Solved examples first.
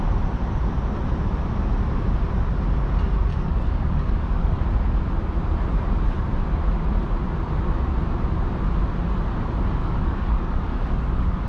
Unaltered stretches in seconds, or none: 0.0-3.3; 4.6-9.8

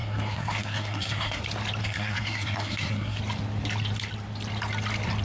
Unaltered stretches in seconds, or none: 1.4-1.8; 3.2-5.2